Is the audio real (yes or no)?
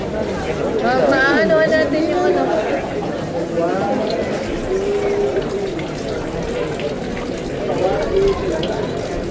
yes